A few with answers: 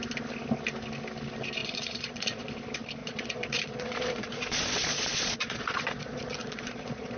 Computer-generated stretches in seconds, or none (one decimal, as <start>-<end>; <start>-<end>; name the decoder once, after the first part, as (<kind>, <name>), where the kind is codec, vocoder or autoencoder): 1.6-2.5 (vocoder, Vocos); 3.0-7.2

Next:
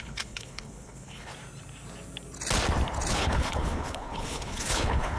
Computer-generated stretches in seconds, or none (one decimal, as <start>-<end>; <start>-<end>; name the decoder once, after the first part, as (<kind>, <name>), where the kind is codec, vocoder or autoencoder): 0.0-1.3 (codec, HILCodec); 3.1-5.2

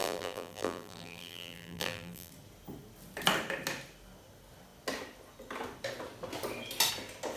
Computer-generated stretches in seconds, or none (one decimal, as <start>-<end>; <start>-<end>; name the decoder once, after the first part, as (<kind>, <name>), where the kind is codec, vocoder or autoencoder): 0.0-2.3 (vocoder, BigVGAN v2)

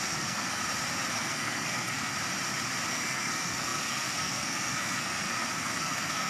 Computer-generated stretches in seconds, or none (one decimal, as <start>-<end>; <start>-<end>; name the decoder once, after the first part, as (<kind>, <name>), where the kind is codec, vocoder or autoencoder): 0.0-0.6 (codec, SNAC); 1.1-2.1; 2.9-6.3

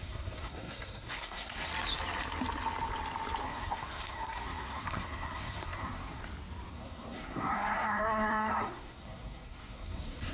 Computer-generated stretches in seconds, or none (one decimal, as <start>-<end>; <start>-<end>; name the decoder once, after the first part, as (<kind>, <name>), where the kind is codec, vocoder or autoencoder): 0.0-1.7 (codec, SNAC); 3.4-6.2; 6.7-10.3